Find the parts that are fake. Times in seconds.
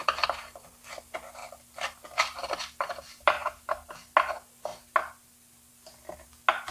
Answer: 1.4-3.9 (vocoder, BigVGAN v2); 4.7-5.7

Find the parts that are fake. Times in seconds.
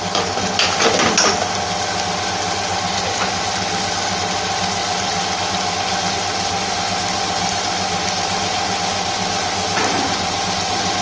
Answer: none